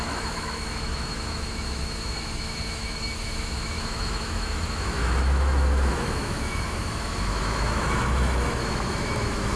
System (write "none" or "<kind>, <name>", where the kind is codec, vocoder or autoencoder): autoencoder, DAC-VAE